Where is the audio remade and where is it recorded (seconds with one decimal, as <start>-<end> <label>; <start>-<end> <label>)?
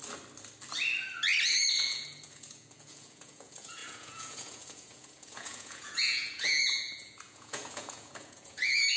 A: 0.0-1.8 recorded; 1.8-9.0 remade